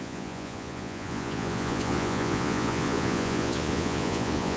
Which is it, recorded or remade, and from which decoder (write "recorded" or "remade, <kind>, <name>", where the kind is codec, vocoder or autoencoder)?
remade, vocoder, Vocos